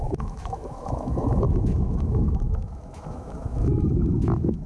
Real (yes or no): no